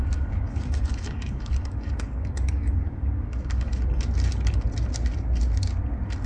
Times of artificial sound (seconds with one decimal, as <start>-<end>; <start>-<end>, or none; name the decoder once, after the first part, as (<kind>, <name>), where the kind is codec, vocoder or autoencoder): 0.0-3.7 (codec, DAC)